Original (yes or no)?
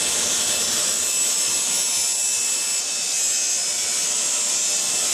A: yes